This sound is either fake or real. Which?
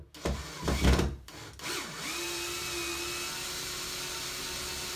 real